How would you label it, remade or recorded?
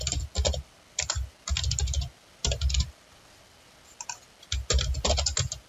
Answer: recorded